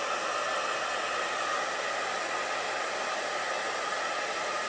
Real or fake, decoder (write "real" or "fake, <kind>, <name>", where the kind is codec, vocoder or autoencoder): real